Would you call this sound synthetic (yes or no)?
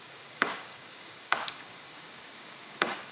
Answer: yes